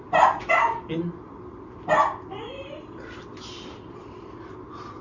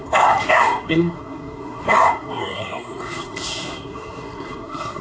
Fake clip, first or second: second